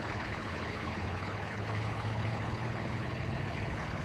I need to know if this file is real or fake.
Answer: fake